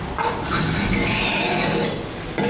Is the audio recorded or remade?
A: recorded